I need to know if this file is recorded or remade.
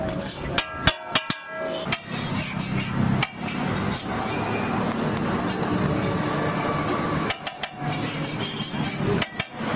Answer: recorded